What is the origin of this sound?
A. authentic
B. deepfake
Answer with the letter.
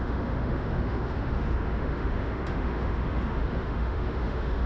B